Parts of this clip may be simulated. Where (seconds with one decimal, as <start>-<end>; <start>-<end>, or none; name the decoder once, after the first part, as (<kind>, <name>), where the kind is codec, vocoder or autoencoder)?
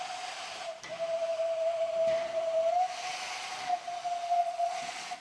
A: 4.4-5.2 (vocoder, Vocos)